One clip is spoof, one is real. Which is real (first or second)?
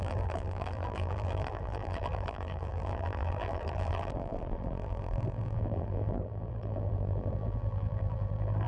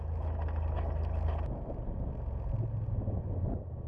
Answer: second